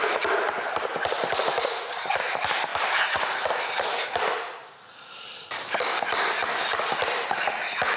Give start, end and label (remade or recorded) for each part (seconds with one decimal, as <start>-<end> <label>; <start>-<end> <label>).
0.0-2.7 recorded; 2.7-3.3 remade; 3.3-8.0 recorded